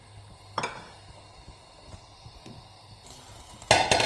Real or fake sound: real